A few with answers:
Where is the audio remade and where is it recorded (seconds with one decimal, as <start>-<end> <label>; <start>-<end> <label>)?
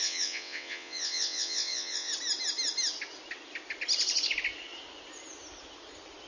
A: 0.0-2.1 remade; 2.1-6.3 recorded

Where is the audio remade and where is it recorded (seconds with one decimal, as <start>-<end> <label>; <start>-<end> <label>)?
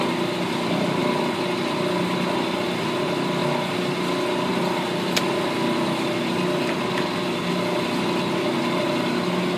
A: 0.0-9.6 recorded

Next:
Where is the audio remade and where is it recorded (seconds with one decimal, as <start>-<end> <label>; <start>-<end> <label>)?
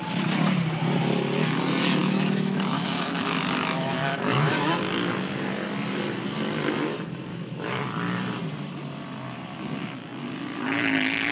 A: 0.0-2.0 recorded; 2.0-4.7 remade; 4.7-7.3 recorded; 7.3-7.8 remade; 7.8-11.3 recorded